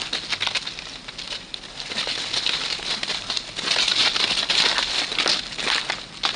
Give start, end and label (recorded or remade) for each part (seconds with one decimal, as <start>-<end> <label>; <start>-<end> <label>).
0.0-6.4 recorded